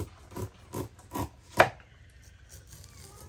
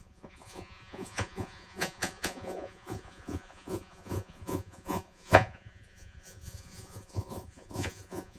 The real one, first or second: first